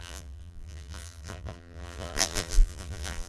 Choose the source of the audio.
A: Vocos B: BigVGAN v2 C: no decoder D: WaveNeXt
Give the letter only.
B